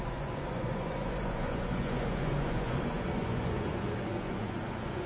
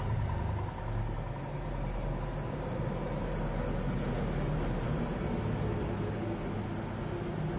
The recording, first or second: second